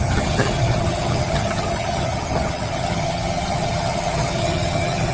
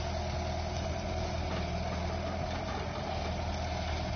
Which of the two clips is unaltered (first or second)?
second